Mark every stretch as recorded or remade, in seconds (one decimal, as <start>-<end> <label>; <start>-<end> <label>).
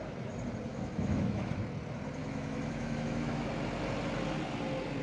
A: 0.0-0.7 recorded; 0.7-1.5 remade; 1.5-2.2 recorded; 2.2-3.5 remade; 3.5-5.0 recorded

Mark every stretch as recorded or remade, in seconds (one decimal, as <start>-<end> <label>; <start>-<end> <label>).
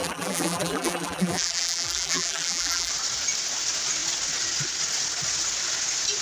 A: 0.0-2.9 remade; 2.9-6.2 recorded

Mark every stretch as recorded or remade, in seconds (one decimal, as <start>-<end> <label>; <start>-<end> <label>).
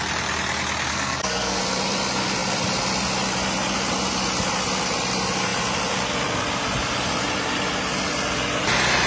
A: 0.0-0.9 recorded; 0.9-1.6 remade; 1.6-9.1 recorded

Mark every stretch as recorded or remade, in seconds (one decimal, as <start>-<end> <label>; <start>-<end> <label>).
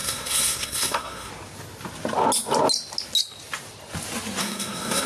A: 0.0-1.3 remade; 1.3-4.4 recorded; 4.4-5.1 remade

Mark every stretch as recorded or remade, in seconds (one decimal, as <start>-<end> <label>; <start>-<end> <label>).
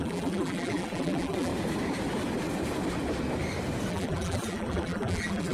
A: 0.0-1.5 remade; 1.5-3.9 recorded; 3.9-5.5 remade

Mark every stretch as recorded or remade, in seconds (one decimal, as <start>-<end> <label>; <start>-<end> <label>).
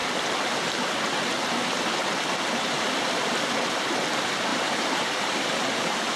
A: 0.0-4.5 recorded; 4.5-6.2 remade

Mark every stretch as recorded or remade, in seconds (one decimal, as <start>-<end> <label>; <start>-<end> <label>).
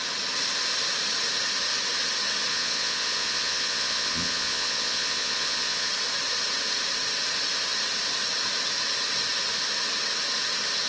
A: 0.0-2.5 recorded; 2.5-5.9 remade; 5.9-10.9 recorded